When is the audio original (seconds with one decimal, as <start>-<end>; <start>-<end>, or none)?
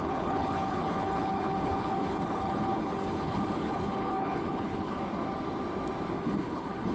5.0-6.2